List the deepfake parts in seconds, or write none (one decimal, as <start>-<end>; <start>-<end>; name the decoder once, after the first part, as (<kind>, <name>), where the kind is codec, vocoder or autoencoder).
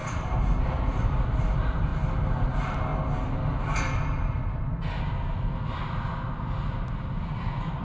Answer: 0.0-1.9 (vocoder, BigVGAN v2); 2.4-2.9; 7.3-7.8